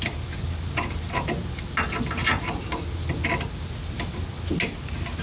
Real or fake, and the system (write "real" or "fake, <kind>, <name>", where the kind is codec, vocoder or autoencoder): real